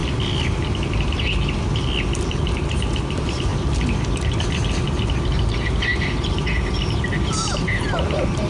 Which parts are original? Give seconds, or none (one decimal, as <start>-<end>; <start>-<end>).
0.0-3.1; 3.5-5.0